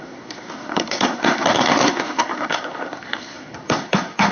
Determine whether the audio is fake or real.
fake